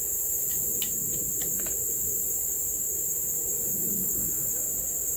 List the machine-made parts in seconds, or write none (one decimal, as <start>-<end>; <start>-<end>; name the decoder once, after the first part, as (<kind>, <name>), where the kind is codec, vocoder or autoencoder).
3.7-4.7 (autoencoder, DAC-VAE)